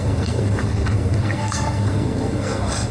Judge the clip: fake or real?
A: fake